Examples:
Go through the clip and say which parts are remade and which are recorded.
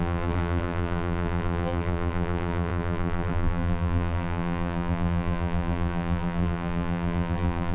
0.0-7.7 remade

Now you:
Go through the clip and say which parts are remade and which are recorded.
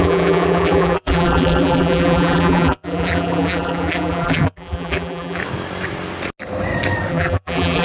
0.0-5.4 remade; 5.4-7.1 recorded; 7.1-7.8 remade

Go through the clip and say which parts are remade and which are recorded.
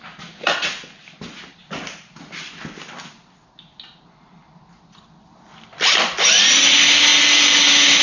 0.0-8.0 recorded